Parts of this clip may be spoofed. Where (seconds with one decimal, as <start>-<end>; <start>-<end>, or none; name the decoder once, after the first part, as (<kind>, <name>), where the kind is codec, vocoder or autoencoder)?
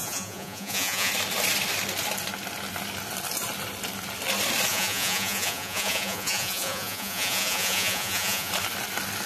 0.0-1.1 (vocoder, Vocos); 4.7-8.5